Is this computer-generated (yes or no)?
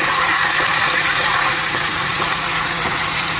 yes